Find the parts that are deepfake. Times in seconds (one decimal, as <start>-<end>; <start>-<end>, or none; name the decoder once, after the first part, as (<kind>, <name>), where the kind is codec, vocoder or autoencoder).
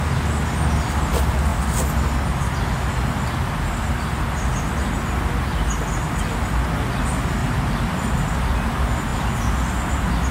7.4-8.1 (vocoder, BigVGAN v2)